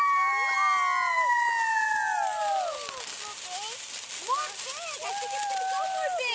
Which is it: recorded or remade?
recorded